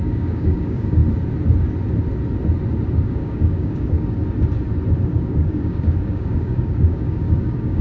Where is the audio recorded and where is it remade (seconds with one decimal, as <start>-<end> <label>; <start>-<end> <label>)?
0.0-1.0 remade; 1.0-3.0 recorded; 3.0-4.2 remade; 4.2-5.0 recorded; 5.0-7.8 remade